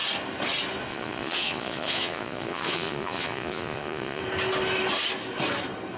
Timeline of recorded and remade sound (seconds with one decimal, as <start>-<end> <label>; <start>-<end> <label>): 0.0-0.9 recorded; 0.9-4.2 remade; 4.2-6.0 recorded